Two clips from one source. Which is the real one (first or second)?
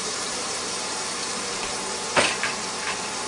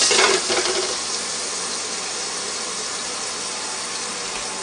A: second